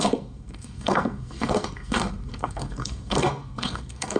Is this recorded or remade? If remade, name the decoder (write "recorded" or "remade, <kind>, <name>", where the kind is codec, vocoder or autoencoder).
remade, codec, SNAC